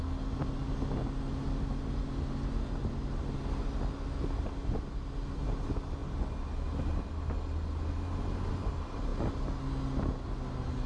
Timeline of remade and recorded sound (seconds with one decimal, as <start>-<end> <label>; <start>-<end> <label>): 0.0-10.9 recorded